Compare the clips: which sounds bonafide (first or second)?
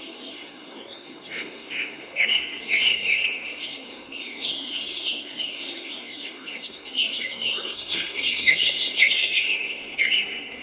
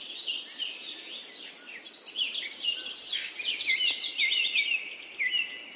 second